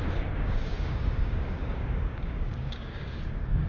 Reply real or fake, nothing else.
fake